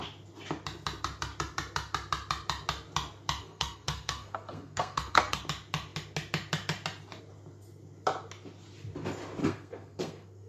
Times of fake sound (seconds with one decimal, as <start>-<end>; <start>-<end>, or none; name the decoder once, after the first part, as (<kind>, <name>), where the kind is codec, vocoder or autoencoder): 3.4-5.4 (codec, SNAC); 9.4-10.5